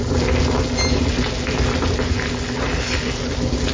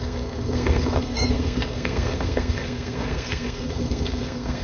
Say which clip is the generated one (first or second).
second